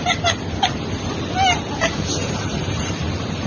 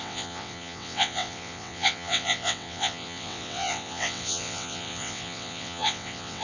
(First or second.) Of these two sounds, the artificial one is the second